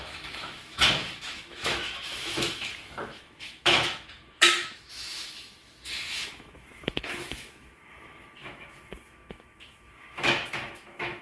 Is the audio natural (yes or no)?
no